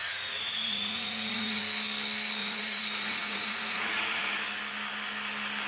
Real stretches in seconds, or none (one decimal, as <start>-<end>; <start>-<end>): 1.6-2.4; 4.2-5.7